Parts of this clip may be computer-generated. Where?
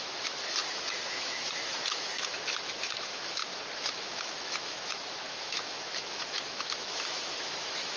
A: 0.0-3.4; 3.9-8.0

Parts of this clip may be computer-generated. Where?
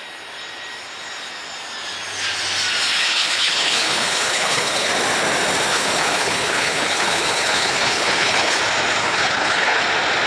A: 3.0-4.9; 5.7-8.6; 9.0-9.8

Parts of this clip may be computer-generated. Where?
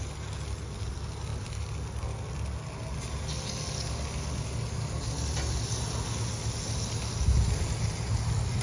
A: none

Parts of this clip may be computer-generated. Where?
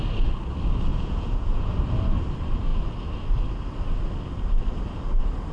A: 0.9-1.7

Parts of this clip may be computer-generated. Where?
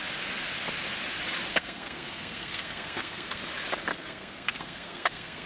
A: 1.5-3.4; 3.9-5.5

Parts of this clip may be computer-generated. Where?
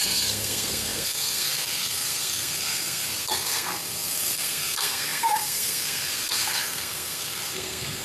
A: 0.0-8.0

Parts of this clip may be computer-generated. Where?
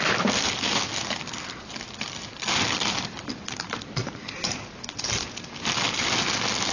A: none